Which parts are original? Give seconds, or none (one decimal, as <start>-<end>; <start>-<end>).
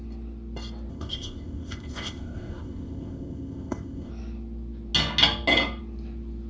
0.0-0.9; 4.1-6.5